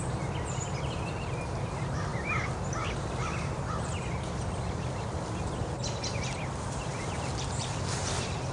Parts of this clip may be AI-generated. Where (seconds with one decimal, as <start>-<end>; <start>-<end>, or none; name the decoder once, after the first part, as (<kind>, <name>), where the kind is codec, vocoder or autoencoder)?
none